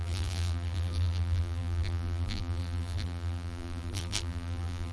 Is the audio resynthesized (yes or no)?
yes